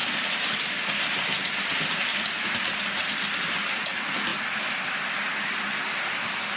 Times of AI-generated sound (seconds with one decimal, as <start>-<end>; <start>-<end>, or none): none